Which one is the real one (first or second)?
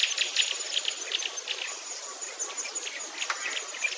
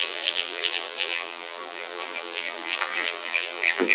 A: first